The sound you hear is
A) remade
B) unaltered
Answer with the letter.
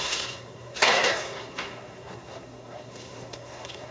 A